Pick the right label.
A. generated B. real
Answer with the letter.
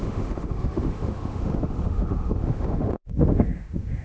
A